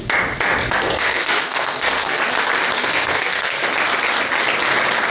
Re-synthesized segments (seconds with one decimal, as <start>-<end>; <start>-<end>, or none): 0.6-2.2; 2.8-3.6